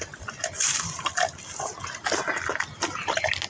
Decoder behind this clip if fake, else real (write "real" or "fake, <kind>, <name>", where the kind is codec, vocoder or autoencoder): real